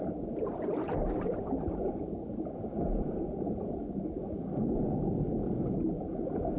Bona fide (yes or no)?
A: yes